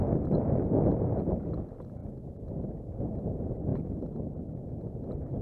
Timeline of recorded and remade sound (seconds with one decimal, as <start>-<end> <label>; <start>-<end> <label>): 0.0-2.0 recorded; 2.0-2.5 remade; 2.5-5.4 recorded